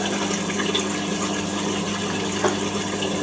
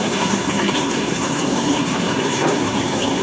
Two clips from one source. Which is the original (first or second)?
first